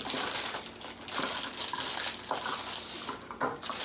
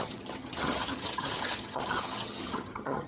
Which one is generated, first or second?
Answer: second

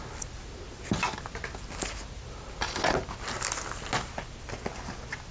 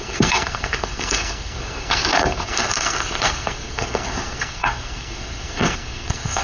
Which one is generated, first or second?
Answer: second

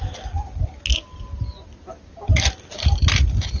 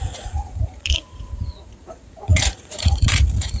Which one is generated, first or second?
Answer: second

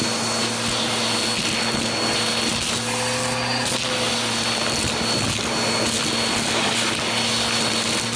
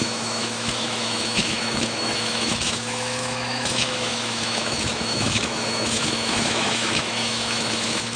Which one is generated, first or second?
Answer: second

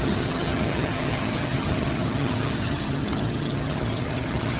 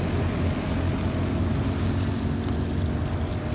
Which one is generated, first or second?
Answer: first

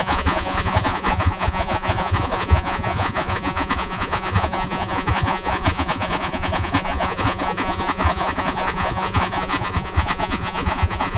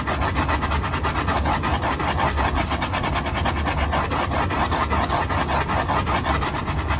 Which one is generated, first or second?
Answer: first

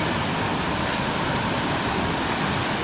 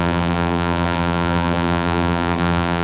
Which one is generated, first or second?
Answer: second